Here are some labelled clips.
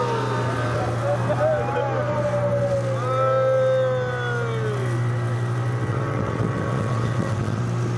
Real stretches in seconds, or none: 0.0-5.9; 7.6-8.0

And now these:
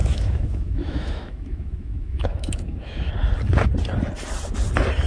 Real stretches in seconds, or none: 3.1-5.1

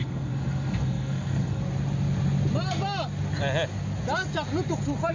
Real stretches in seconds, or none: 1.6-5.1

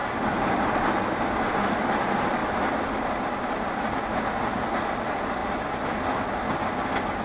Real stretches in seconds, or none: 0.7-5.4; 6.2-7.2

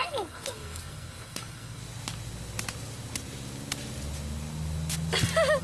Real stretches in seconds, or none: 1.8-5.6

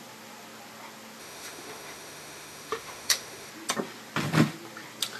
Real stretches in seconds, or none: 0.0-1.2; 3.5-5.2

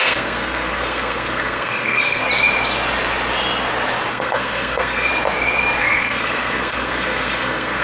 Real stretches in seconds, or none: 2.2-4.1; 5.1-5.8

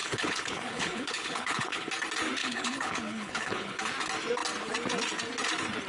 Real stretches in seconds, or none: 1.9-2.4; 3.8-5.9